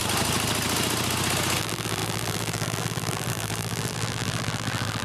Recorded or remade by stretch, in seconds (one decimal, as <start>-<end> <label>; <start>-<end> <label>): 0.0-1.6 recorded; 1.6-5.0 remade